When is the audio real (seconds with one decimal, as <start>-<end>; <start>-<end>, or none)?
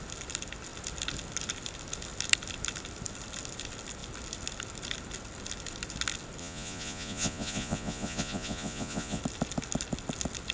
0.0-6.4; 9.2-10.5